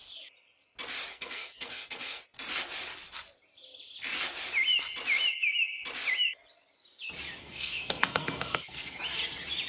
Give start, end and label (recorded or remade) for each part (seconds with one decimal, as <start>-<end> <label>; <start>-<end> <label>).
0.0-1.1 recorded; 1.1-2.2 remade; 2.2-7.4 recorded; 7.4-9.0 remade; 9.0-9.7 recorded